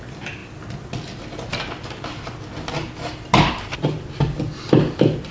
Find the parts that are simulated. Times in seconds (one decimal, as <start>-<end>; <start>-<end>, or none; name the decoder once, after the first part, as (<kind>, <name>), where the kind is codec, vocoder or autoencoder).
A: none